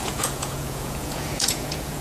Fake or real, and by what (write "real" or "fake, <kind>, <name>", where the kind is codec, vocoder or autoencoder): fake, vocoder, Vocos